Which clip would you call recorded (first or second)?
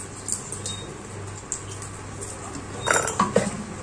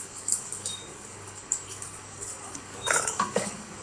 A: first